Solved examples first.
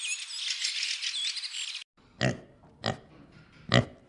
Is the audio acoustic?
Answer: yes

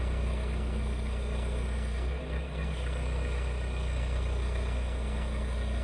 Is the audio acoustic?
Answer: no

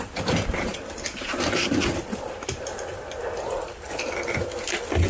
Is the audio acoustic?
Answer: no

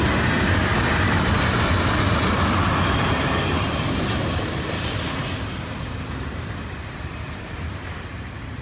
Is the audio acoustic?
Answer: yes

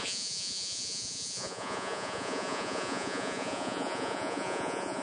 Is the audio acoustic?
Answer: no